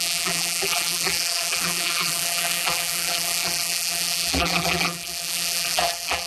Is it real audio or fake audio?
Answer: fake